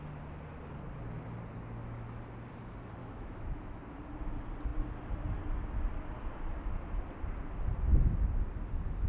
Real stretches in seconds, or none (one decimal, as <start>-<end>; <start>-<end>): 0.0-3.0; 3.8-9.1